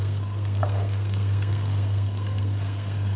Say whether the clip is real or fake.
fake